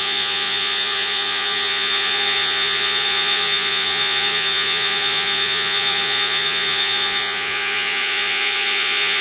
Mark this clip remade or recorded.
remade